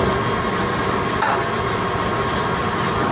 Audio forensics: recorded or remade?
recorded